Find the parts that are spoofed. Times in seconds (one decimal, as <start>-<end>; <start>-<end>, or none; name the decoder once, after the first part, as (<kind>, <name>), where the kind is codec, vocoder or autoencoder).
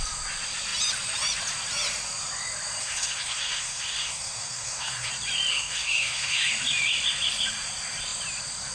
2.8-5.1 (codec, SNAC); 5.5-6.5